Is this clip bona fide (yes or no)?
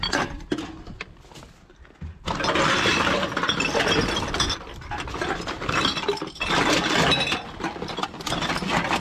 yes